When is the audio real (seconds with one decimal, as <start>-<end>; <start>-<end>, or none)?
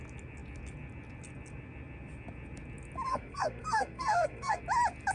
0.0-3.1; 4.6-5.1